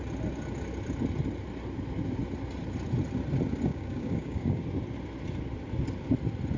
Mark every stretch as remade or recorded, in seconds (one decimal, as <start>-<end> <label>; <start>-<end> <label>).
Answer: 0.0-3.7 recorded; 3.7-4.6 remade; 4.6-6.6 recorded